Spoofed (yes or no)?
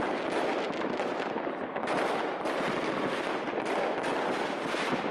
no